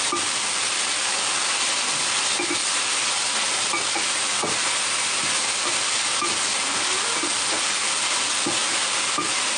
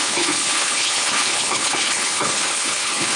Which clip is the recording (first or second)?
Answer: first